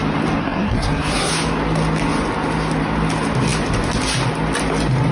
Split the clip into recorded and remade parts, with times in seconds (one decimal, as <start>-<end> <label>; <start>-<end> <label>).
0.0-0.4 recorded; 0.4-1.3 remade; 1.3-5.1 recorded